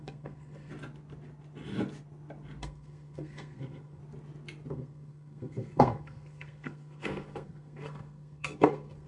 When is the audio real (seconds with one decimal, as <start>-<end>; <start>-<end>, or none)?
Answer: 0.7-2.6; 4.0-4.7